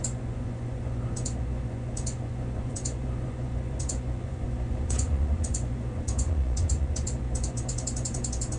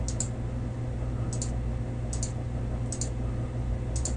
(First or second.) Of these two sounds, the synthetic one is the first